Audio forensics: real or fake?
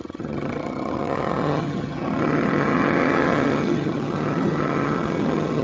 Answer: fake